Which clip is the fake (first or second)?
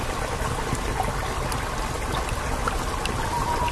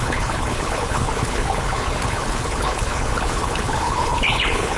second